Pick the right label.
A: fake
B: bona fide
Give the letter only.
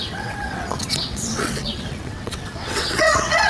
A